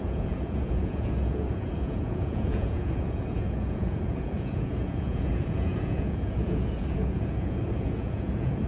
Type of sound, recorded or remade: remade